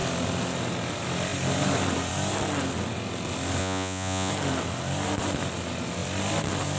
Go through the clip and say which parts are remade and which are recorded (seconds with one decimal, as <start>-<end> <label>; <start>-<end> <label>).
0.0-3.6 recorded; 3.6-4.3 remade; 4.3-6.8 recorded